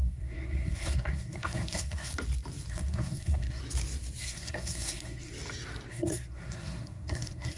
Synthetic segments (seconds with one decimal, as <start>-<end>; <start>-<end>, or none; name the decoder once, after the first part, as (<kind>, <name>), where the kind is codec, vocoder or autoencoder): 0.0-2.1 (codec, SNAC); 2.7-3.6; 4.2-5.3; 5.9-7.6

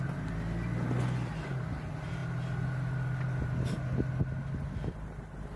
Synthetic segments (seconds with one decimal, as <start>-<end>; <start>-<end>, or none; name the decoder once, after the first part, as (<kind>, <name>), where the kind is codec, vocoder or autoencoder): none